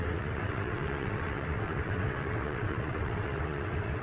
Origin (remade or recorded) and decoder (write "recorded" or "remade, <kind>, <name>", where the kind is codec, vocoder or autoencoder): remade, vocoder, WaveNeXt